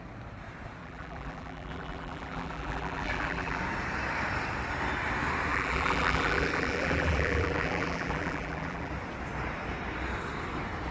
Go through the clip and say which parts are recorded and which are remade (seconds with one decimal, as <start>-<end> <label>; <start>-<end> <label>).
0.0-0.8 recorded; 0.8-3.6 remade; 3.6-5.5 recorded; 5.5-8.9 remade; 8.9-10.9 recorded